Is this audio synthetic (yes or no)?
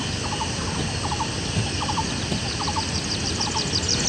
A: no